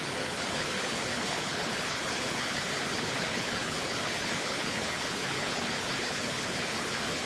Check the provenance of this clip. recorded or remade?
remade